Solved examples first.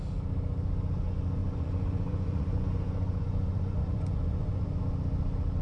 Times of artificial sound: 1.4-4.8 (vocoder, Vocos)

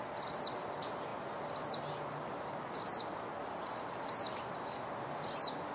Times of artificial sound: none